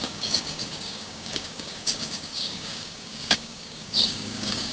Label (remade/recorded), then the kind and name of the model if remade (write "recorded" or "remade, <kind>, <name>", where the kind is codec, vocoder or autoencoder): remade, codec, DAC